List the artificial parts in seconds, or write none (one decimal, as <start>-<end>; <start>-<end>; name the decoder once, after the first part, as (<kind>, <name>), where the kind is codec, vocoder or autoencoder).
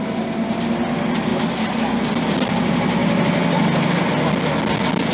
none